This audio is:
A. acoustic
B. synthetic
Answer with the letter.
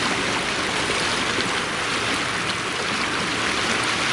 A